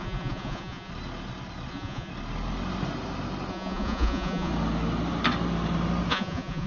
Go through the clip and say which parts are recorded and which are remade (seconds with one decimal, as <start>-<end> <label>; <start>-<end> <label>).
0.0-0.9 remade; 0.9-1.7 recorded; 1.7-2.1 remade; 2.1-3.5 recorded; 3.5-4.5 remade; 4.5-6.1 recorded; 6.1-6.7 remade